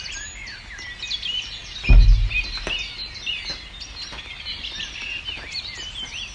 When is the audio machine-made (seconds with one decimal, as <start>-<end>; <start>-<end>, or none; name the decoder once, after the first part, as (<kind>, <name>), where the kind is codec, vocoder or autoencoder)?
none